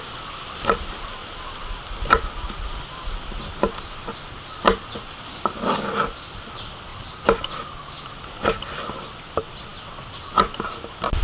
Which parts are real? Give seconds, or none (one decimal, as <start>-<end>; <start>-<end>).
1.2-6.5; 6.9-7.9